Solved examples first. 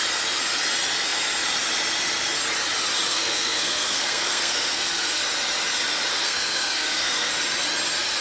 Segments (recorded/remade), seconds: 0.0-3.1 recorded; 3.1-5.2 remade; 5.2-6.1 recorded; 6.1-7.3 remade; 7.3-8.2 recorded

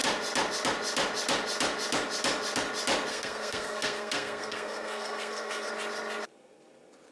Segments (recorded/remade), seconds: 0.0-3.1 recorded; 3.1-5.7 remade; 5.7-7.1 recorded

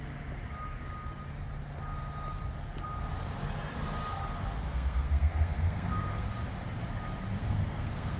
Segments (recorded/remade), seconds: 0.0-4.6 recorded; 4.6-6.3 remade; 6.3-7.4 recorded; 7.4-8.2 remade

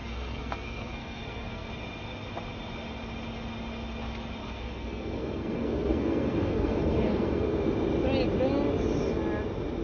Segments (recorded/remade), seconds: 0.0-1.7 remade; 1.7-4.4 recorded; 4.4-7.7 remade; 7.7-9.8 recorded